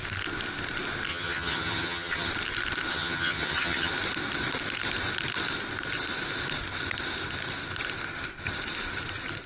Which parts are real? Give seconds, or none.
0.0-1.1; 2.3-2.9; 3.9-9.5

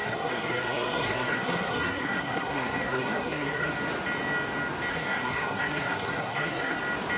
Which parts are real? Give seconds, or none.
3.7-4.9; 6.8-7.2